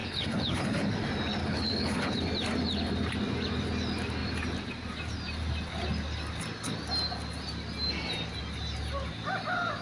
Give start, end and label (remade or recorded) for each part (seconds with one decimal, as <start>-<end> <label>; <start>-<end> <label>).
0.0-0.9 remade; 0.9-1.4 recorded; 1.4-2.2 remade; 2.2-9.8 recorded